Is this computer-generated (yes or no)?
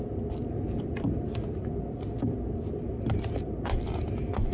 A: no